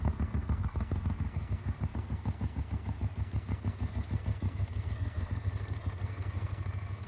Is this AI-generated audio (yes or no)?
yes